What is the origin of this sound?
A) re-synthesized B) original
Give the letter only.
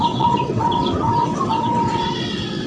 A